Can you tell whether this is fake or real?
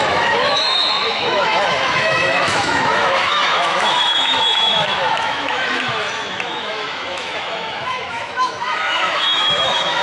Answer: fake